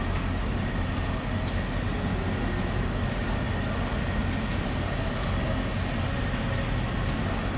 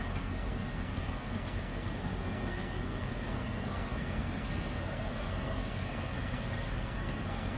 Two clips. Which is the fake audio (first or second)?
second